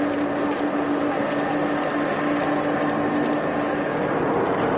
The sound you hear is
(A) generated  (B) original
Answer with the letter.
B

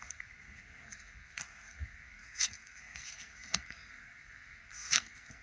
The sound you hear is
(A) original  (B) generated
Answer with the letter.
B